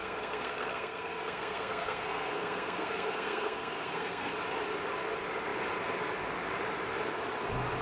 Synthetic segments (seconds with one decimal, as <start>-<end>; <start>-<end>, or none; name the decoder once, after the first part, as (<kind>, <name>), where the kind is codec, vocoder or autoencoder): 0.0-4.3 (codec, SNAC)